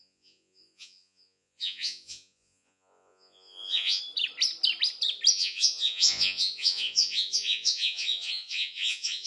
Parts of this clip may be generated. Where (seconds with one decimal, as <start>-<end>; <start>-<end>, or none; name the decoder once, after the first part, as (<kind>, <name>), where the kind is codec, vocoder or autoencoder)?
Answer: 0.0-4.0 (vocoder, Vocos); 5.3-9.3